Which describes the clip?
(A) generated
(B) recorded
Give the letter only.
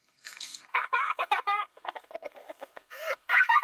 A